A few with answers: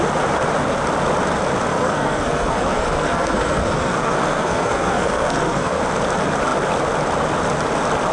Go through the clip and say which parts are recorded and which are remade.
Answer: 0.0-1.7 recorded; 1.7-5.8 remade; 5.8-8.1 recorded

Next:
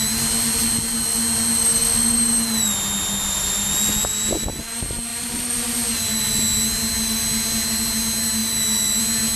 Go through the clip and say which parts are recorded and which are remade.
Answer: 0.0-5.1 recorded; 5.1-6.2 remade; 6.2-9.4 recorded

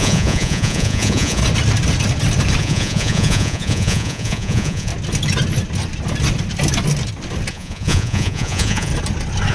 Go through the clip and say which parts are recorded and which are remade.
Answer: 0.0-1.4 remade; 1.4-2.6 recorded; 2.6-4.9 remade; 4.9-7.5 recorded; 7.5-8.9 remade; 8.9-9.5 recorded

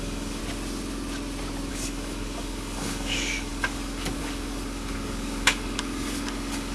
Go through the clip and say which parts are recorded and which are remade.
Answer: 0.0-0.4 remade; 0.4-1.7 recorded; 1.7-6.7 remade

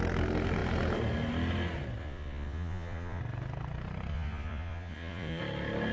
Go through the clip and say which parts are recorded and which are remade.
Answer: 0.0-2.0 recorded; 2.0-3.2 remade; 3.2-4.1 recorded; 4.1-5.4 remade; 5.4-5.9 recorded